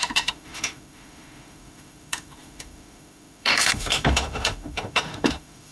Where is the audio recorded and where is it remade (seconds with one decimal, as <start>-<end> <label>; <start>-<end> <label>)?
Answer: 0.0-5.7 remade

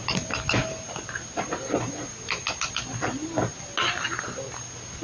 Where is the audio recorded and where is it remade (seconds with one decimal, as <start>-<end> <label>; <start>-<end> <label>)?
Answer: 0.0-5.0 recorded

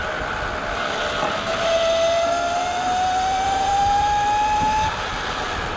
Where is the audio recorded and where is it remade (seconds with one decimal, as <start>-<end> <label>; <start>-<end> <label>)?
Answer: 0.0-1.5 recorded; 1.5-5.0 remade; 5.0-5.8 recorded

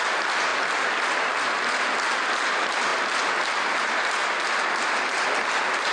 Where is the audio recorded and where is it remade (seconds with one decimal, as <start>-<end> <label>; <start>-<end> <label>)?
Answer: 0.0-5.9 recorded

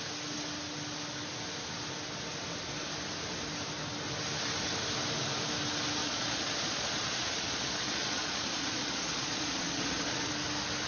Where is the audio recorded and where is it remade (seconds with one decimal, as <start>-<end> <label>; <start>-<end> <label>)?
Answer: 0.0-6.0 recorded; 6.0-10.3 remade; 10.3-10.9 recorded

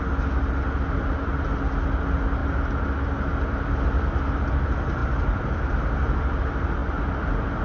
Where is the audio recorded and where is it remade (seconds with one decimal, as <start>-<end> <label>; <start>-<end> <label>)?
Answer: 0.0-5.0 recorded; 5.0-5.7 remade; 5.7-6.8 recorded; 6.8-7.6 remade

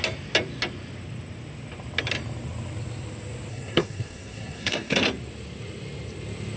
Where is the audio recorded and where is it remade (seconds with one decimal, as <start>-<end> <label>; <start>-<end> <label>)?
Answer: 0.0-3.5 recorded; 3.5-5.0 remade; 5.0-6.6 recorded

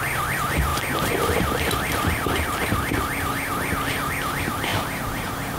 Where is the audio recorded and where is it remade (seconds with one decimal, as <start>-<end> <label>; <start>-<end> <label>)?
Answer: 0.0-5.6 recorded